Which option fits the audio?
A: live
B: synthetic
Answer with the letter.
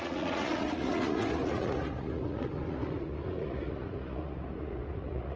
B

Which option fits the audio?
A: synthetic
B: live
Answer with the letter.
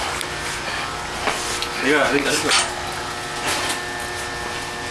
B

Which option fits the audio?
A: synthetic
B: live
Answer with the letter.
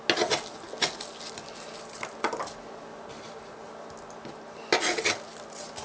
B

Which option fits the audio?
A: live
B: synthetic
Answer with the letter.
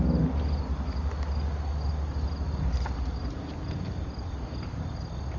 A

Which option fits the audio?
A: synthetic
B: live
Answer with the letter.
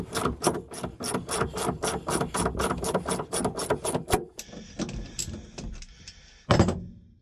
B